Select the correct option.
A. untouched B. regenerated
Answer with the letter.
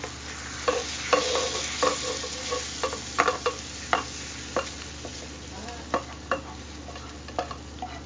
A